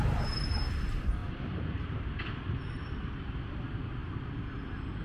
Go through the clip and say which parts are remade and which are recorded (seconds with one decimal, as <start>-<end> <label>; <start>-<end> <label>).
0.0-5.0 recorded